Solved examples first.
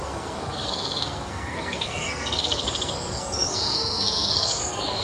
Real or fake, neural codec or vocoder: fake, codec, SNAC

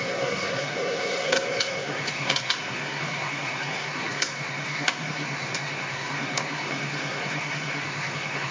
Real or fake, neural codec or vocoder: fake, codec, SNAC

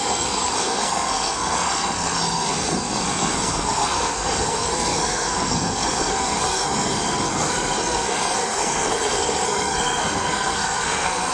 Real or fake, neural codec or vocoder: fake, codec, SNAC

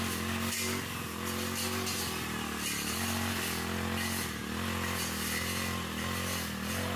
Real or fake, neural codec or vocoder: real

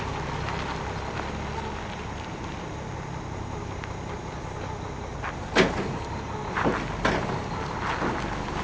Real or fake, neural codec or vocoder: real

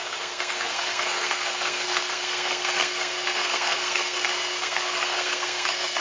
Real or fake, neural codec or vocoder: fake, codec, SNAC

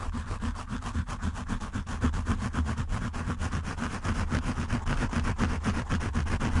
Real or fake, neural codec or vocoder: real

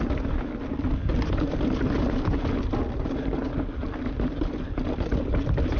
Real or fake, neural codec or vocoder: real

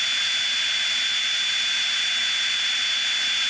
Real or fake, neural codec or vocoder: real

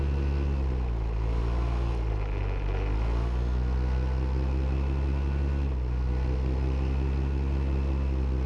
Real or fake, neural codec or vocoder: real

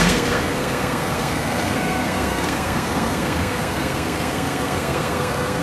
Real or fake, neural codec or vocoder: fake, codec, SNAC